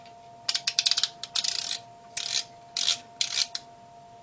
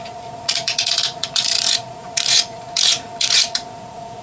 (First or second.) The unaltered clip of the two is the first